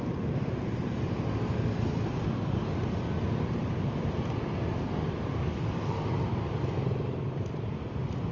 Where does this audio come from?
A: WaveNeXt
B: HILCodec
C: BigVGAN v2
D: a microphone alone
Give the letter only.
D